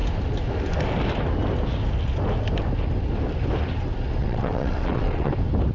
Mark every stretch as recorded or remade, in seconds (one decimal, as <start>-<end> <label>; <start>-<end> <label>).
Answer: 0.0-4.2 recorded; 4.2-5.3 remade; 5.3-5.7 recorded